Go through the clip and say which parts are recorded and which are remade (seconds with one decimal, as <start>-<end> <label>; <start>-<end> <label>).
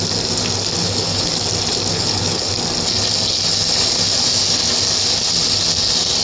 0.0-0.8 recorded; 0.8-1.3 remade; 1.3-1.9 recorded; 1.9-2.5 remade; 2.5-6.2 recorded